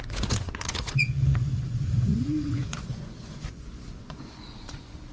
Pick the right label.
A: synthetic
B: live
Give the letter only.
A